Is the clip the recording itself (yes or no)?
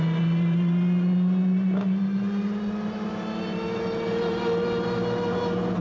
yes